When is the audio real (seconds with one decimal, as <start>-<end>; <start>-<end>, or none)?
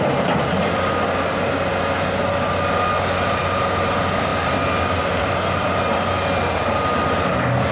0.0-7.7